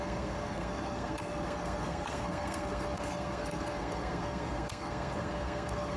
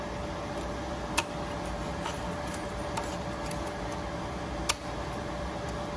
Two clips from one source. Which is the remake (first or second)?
first